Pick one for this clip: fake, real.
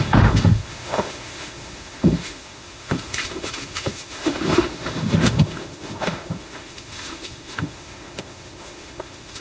fake